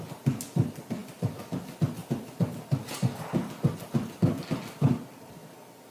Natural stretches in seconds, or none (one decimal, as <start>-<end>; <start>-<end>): 0.0-5.9